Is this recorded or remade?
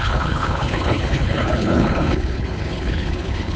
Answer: remade